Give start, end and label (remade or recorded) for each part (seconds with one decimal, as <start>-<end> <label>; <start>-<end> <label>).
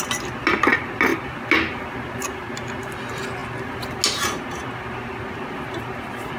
0.0-6.4 recorded